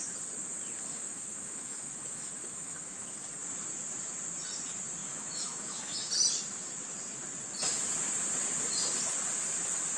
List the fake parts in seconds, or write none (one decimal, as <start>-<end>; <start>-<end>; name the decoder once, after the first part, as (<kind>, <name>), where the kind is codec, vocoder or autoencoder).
0.9-3.1 (autoencoder, DAC-VAE); 5.0-6.1